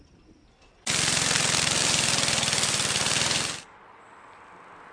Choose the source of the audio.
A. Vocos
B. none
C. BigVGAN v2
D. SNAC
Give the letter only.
B